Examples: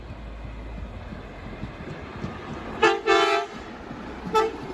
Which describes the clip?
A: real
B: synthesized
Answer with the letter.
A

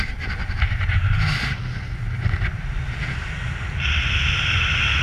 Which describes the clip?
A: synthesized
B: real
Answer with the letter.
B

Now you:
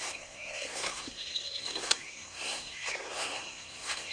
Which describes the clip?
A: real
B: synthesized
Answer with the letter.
B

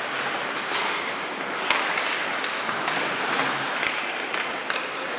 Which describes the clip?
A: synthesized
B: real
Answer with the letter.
B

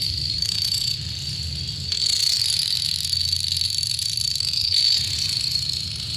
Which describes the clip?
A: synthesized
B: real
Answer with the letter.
B